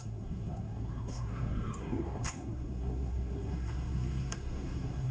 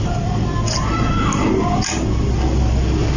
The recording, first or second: second